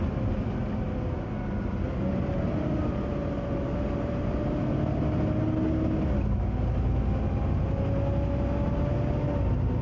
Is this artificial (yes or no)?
no